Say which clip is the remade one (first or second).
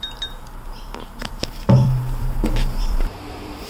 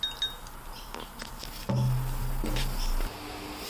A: first